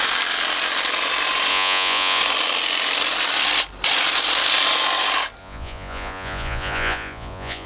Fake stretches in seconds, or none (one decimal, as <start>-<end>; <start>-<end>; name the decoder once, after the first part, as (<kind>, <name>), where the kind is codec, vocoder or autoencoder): 1.5-2.2 (vocoder, Vocos); 5.4-7.7